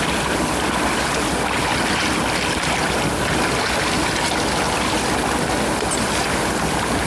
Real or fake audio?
real